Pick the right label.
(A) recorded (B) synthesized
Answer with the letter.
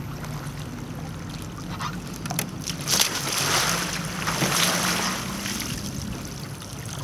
A